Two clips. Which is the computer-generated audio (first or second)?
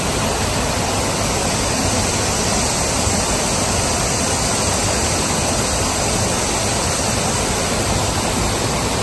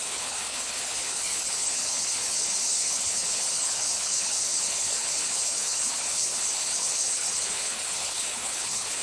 second